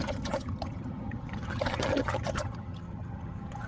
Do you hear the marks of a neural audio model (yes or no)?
yes